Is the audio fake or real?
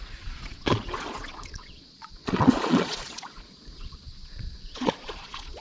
fake